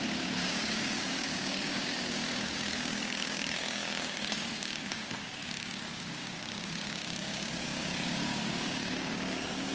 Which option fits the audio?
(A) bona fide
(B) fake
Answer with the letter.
B